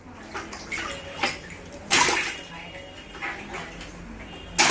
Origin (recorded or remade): recorded